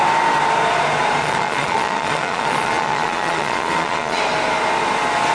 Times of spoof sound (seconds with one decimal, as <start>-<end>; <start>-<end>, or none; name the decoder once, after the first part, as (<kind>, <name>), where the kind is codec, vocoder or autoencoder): 1.2-4.2 (vocoder, Vocos)